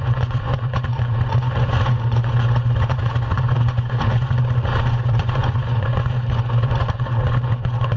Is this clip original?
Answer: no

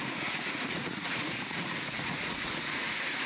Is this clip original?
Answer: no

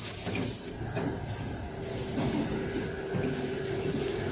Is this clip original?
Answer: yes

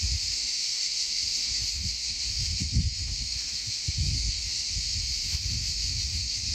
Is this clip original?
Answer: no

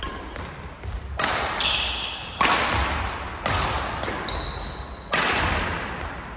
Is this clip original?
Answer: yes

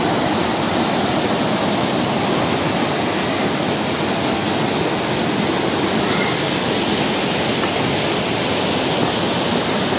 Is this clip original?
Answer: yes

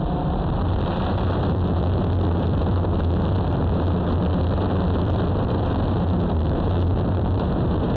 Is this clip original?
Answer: no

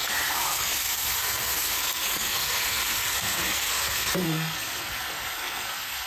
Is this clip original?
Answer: no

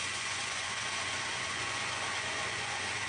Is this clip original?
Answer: no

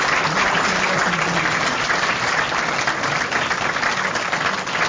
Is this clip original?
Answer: yes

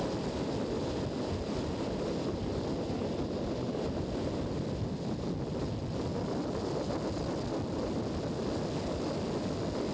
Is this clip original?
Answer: yes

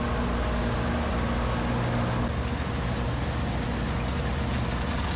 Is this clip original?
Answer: yes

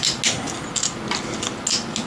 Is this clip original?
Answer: yes